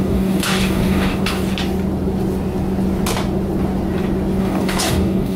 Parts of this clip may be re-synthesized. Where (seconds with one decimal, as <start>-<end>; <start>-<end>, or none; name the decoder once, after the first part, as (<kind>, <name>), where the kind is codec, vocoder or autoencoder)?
0.0-1.4 (codec, DAC); 4.4-5.4